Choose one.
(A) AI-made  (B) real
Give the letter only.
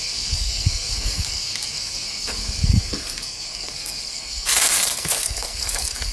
A